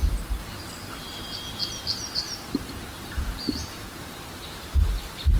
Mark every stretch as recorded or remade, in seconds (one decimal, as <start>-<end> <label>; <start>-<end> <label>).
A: 0.0-5.4 remade